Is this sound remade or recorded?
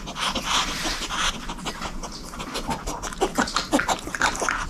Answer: recorded